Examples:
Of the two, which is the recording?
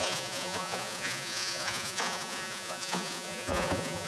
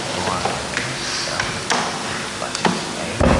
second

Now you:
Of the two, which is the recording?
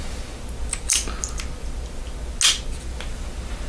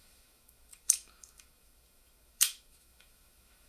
first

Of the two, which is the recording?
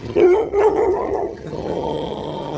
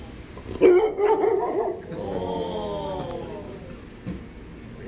second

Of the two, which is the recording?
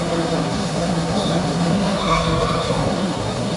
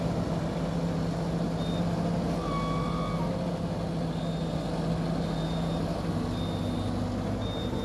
second